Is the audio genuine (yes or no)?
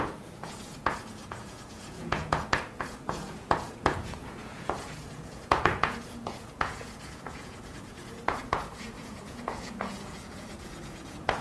no